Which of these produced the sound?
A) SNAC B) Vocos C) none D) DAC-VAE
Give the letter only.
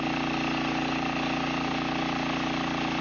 C